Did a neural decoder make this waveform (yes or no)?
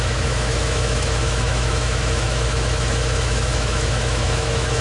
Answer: yes